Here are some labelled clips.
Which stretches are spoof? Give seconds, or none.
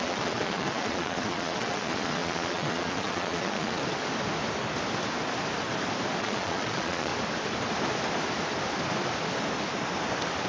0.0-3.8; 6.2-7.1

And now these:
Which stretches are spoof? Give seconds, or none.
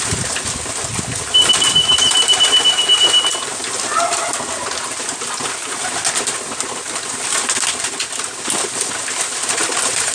none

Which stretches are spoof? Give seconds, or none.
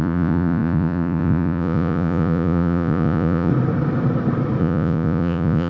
0.0-3.5; 4.6-5.7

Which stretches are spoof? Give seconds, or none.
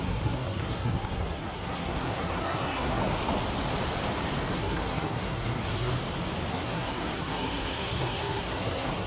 0.0-3.0; 4.5-5.9; 6.5-9.1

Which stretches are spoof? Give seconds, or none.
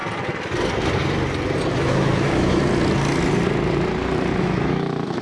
1.8-2.6; 4.4-5.2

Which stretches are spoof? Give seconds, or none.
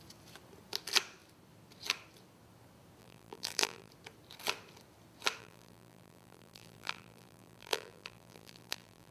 3.0-3.9; 5.4-9.1